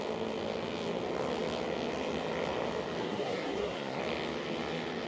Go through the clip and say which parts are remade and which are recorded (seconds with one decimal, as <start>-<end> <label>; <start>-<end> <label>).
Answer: 0.0-3.0 recorded; 3.0-4.0 remade; 4.0-5.1 recorded